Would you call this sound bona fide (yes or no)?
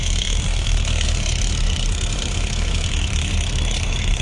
no